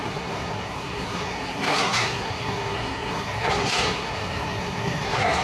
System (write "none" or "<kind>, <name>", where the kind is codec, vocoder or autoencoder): codec, SNAC